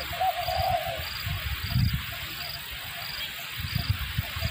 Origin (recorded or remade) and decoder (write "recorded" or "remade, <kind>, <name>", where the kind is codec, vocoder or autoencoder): recorded